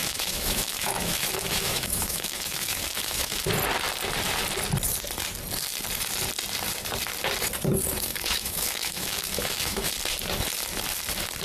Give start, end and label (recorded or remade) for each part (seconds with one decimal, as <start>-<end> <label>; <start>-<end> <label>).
0.0-3.5 remade; 3.5-8.1 recorded; 8.1-9.9 remade; 9.9-11.4 recorded